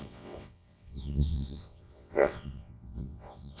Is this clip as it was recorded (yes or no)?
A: no